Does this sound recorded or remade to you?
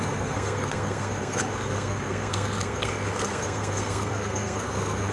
remade